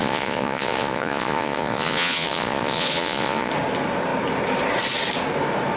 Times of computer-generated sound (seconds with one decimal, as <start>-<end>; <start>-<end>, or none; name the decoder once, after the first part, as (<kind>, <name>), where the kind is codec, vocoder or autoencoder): 0.0-3.5 (vocoder, Vocos)